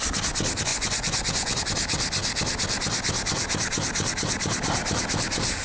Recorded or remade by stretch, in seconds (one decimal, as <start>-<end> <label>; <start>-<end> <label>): 0.0-0.7 recorded; 0.7-1.6 remade; 1.6-5.6 recorded